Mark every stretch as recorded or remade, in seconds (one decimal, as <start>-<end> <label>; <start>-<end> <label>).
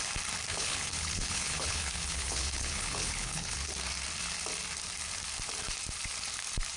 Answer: 0.0-0.5 recorded; 0.5-3.7 remade; 3.7-6.8 recorded